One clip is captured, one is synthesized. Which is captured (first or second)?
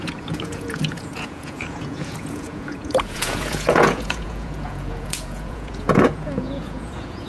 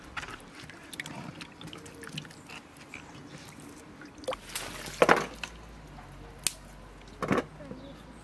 second